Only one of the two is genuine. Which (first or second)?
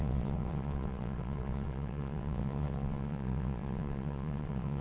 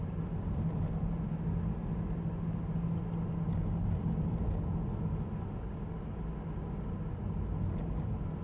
second